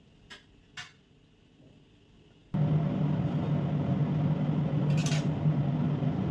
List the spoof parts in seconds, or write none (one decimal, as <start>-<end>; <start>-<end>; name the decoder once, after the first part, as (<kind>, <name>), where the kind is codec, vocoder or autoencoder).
none